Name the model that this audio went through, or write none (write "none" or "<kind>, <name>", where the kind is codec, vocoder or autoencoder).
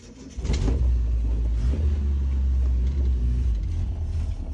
none